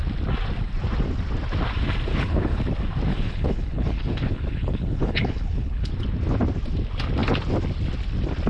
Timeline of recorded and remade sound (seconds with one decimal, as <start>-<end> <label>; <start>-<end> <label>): 0.0-2.1 recorded; 2.1-2.6 remade; 2.6-3.1 recorded; 3.1-5.9 remade; 5.9-8.5 recorded